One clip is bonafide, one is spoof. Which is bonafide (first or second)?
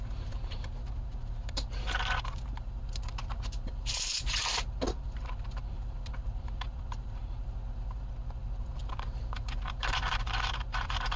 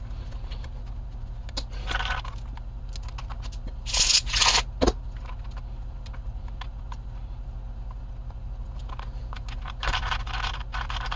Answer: second